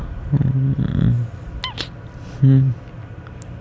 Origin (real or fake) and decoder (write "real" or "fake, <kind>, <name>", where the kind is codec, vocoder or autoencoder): real